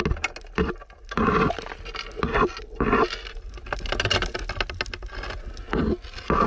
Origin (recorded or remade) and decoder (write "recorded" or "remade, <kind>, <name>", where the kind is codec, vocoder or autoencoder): recorded